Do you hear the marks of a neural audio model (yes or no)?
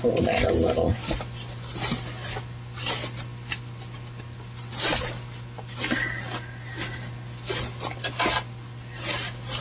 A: no